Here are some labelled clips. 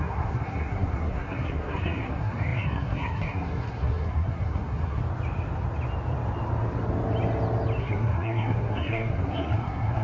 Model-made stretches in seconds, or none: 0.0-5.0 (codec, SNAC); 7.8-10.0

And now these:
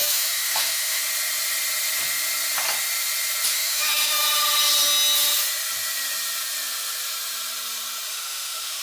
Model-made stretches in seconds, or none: 0.0-1.0 (autoencoder, DAC-VAE); 3.5-4.2; 8.1-8.8

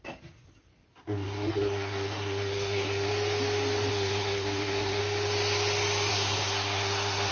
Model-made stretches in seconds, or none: 0.9-3.1 (codec, SNAC); 3.9-5.0; 6.1-7.3

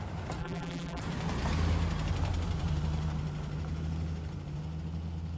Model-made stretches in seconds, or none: 0.4-1.0 (vocoder, BigVGAN v2)

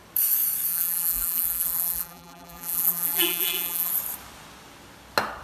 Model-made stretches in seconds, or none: 0.7-3.9 (vocoder, BigVGAN v2)

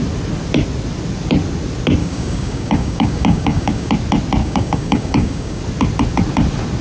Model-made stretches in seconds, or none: 2.0-3.9 (codec, DAC); 4.4-5.6